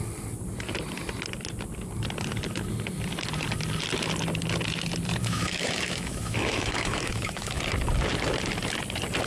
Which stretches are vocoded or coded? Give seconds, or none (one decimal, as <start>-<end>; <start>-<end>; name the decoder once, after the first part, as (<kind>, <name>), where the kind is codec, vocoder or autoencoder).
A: 5.2-7.6 (autoencoder, DAC-VAE)